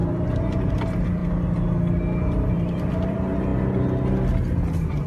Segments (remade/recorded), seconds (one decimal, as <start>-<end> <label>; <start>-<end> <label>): 0.0-0.7 recorded; 0.7-1.2 remade; 1.2-2.5 recorded; 2.5-3.5 remade; 3.5-5.1 recorded

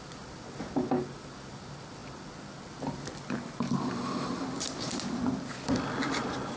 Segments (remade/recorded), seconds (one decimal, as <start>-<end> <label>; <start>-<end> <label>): 0.0-6.6 recorded

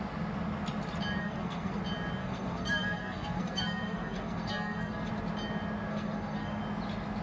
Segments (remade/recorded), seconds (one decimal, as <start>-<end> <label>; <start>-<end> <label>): 0.0-1.2 recorded; 1.2-1.8 remade; 1.8-2.2 recorded; 2.2-5.1 remade; 5.1-5.9 recorded; 5.9-6.6 remade; 6.6-7.2 recorded